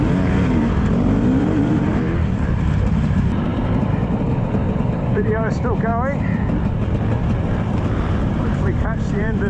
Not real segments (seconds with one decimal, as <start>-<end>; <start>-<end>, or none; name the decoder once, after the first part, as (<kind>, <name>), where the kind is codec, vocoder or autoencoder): 0.0-5.9 (vocoder, BigVGAN v2); 7.7-9.5